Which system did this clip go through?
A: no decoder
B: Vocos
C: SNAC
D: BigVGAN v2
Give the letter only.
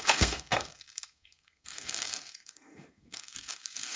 C